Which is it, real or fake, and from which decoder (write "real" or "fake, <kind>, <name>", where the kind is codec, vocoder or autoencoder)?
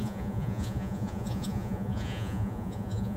fake, vocoder, Vocos